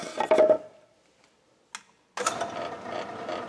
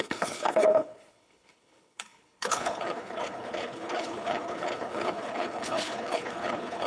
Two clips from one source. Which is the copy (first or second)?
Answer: second